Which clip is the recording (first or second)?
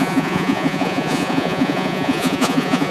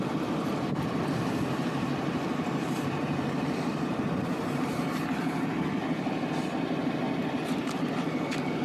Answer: second